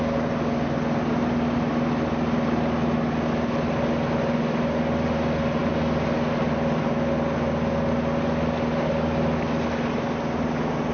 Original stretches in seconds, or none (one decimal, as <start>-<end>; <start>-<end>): 0.0-10.9